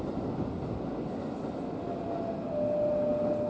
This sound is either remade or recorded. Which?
recorded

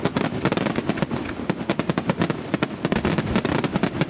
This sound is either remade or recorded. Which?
recorded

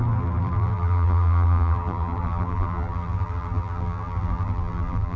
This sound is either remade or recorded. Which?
remade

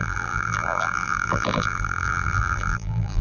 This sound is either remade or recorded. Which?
remade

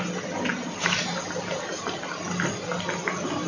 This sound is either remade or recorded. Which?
recorded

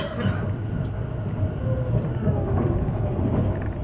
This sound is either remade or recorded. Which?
recorded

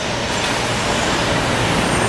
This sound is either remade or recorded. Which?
recorded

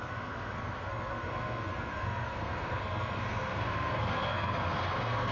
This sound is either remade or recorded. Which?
remade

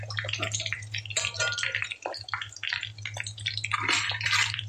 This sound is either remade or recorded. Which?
recorded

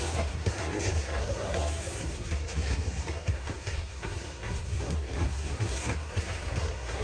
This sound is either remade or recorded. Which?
remade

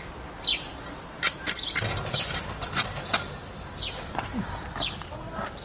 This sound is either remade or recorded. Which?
recorded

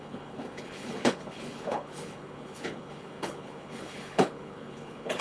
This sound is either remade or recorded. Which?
remade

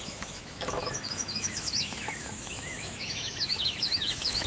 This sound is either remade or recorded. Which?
remade